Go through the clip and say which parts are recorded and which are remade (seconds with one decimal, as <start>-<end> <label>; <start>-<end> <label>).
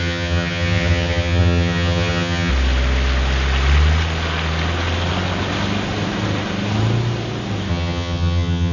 0.0-2.5 remade; 2.5-7.7 recorded; 7.7-8.7 remade